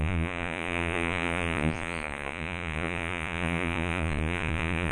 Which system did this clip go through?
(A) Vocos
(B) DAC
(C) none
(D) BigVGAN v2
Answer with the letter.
A